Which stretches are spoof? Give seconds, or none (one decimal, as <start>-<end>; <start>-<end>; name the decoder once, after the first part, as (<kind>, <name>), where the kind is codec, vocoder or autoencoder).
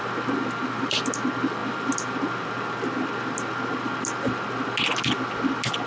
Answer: none